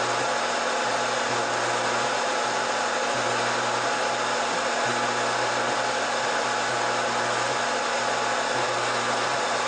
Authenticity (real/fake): real